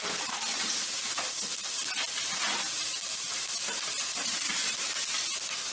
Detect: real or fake real